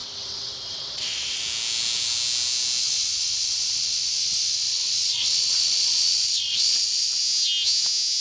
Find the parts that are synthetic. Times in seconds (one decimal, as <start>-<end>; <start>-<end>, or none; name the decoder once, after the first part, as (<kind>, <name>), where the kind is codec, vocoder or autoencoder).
0.0-1.4 (vocoder, WaveNeXt); 2.8-7.2